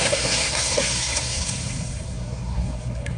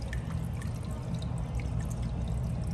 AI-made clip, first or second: first